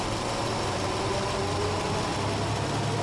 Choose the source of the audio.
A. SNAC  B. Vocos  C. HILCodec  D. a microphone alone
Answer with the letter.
D